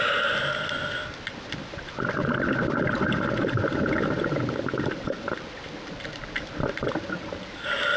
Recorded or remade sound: recorded